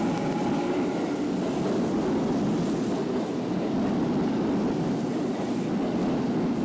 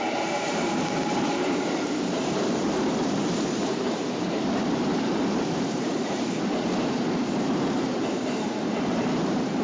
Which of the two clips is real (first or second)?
first